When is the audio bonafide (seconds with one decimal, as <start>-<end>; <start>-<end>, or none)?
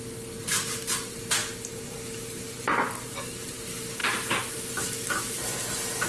0.0-6.1